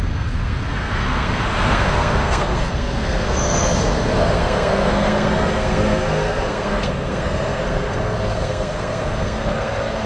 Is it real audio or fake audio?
fake